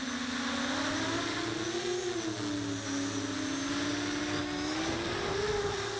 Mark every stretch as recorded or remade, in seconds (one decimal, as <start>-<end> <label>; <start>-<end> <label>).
0.0-6.0 recorded